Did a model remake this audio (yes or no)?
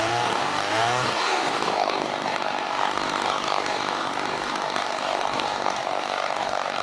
yes